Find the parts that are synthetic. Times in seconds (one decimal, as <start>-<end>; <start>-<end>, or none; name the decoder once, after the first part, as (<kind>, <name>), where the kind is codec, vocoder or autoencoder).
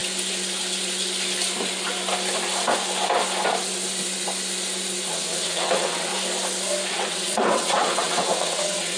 5.1-6.1 (vocoder, WaveNeXt); 6.9-9.0